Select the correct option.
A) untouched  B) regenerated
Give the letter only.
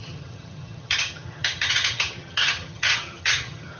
B